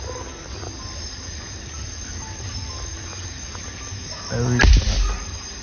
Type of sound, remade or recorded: recorded